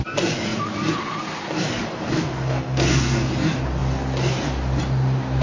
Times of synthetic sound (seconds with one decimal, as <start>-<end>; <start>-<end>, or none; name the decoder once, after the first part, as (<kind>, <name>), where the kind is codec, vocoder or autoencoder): 2.1-3.3 (codec, SNAC)